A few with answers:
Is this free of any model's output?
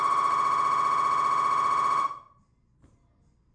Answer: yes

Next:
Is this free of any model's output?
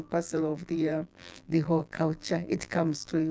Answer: no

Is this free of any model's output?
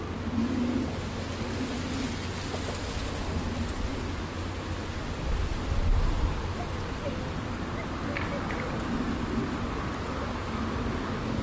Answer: yes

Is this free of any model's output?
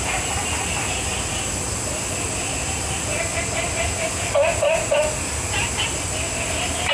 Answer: yes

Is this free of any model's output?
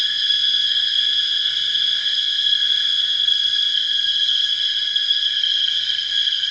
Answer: no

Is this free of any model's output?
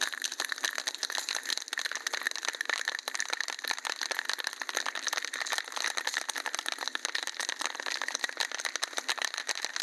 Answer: yes